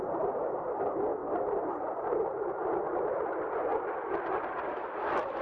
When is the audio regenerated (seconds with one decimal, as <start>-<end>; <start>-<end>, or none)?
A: 0.0-3.7